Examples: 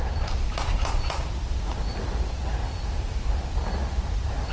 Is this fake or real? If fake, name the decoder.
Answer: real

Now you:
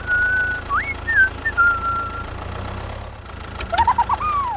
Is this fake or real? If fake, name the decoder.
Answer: real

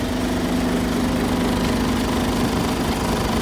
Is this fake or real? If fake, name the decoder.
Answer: real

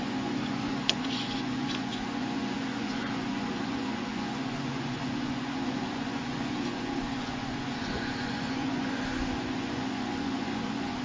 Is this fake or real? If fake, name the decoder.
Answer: fake, vocoder, Vocos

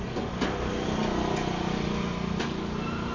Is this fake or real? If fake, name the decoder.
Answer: real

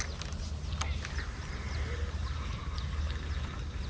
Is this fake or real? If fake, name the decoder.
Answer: real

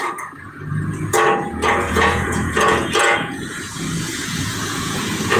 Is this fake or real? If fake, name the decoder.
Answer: fake, vocoder, Vocos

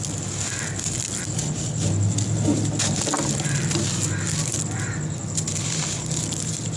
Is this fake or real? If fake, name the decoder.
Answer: real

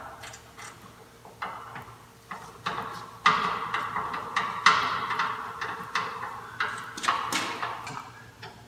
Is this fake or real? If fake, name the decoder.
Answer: real